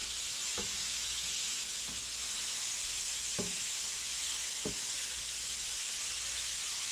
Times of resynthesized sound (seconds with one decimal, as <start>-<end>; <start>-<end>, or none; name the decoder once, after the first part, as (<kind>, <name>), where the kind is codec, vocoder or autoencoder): 0.0-6.9 (autoencoder, DAC-VAE)